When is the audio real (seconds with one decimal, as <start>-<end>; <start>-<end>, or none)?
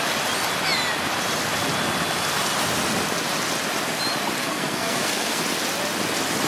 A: 0.0-4.4; 5.4-6.5